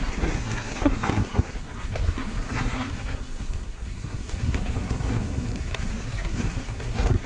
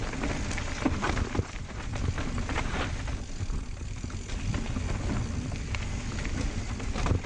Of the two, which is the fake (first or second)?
first